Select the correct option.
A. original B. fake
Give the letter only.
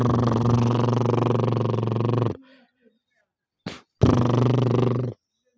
A